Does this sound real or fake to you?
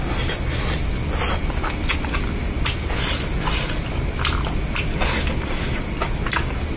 real